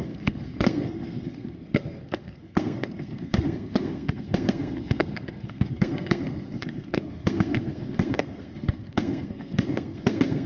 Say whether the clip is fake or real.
fake